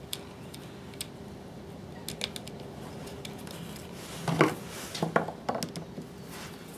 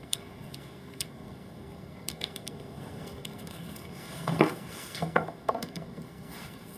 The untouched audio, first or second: first